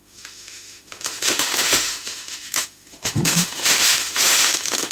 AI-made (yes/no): yes